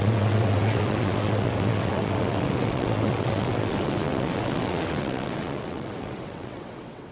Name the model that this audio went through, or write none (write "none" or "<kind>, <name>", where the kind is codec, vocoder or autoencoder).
vocoder, WaveNeXt